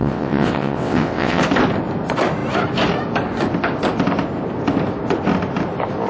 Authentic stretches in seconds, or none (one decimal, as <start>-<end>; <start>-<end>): 1.4-6.1